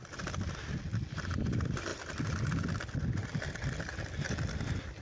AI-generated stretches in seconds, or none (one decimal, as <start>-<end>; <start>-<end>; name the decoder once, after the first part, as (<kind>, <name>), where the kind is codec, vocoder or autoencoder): none